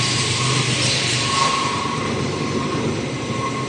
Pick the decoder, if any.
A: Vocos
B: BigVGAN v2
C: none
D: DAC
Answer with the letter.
B